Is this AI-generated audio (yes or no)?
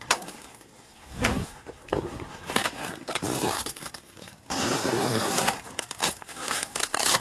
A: yes